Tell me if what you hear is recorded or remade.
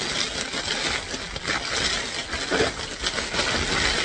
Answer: recorded